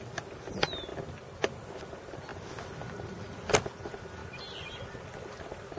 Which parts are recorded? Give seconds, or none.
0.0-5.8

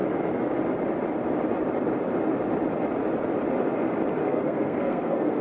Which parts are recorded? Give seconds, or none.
0.0-4.2

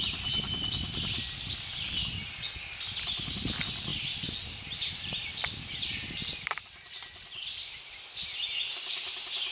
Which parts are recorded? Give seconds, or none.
0.0-9.5

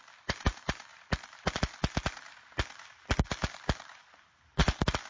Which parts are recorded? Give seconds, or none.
0.0-5.1

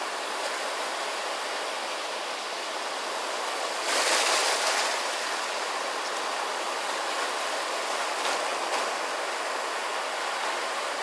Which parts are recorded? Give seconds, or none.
0.0-11.0

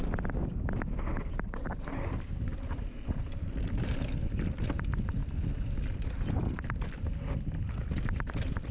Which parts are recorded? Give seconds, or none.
0.0-8.7